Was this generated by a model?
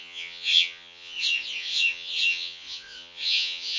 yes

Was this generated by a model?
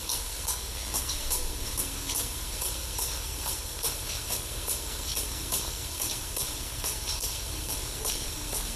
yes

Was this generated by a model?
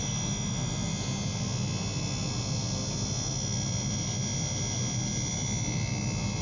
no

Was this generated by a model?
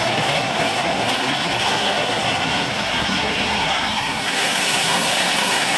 yes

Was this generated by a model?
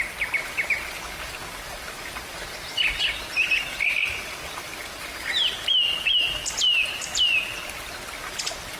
no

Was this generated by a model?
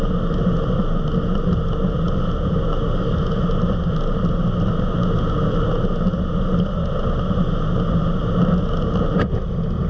no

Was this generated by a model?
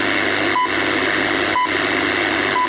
no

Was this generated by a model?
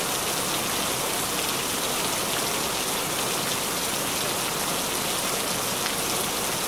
no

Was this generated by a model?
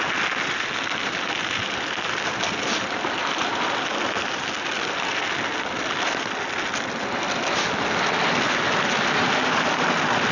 no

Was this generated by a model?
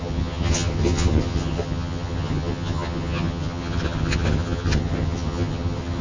yes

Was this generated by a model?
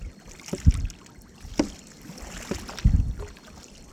no